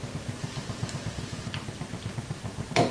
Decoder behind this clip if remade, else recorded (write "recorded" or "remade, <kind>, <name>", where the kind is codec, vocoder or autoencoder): recorded